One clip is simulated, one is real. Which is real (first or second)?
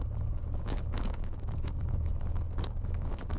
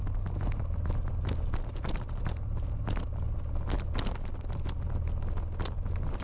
second